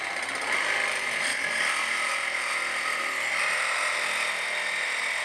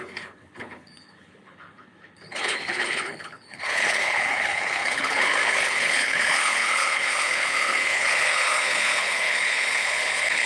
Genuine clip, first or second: first